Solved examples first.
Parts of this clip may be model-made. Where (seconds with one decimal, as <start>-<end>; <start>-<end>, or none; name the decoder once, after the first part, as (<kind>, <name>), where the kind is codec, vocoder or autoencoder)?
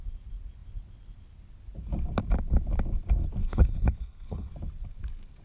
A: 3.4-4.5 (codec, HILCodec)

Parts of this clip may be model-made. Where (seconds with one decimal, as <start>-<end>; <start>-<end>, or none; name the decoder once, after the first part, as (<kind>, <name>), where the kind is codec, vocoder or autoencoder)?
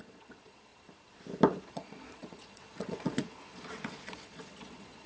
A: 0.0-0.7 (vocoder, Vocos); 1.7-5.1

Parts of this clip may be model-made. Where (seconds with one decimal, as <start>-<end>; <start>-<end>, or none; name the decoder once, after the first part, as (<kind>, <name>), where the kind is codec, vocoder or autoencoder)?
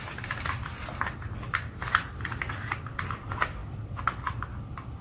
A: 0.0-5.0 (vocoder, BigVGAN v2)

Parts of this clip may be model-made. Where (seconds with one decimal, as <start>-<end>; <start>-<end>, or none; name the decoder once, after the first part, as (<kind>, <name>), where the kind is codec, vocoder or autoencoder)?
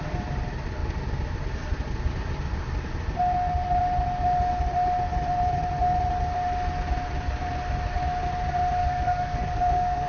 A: 8.8-10.1 (codec, DAC)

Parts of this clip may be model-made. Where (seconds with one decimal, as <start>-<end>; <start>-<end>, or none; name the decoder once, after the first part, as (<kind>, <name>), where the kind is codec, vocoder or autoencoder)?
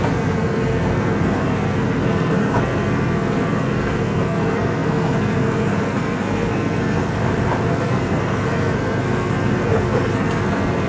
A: 0.0-7.2 (codec, SNAC); 7.7-10.9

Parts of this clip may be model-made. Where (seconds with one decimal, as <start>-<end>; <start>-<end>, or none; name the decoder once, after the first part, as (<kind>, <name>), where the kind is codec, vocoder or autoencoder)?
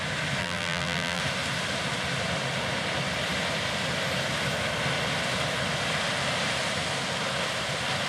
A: 0.4-1.2 (vocoder, BigVGAN v2)